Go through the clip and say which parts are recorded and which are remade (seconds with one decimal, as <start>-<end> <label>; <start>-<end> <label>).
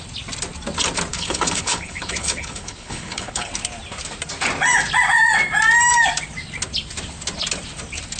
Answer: 0.0-1.1 recorded; 1.1-3.5 remade; 3.5-8.2 recorded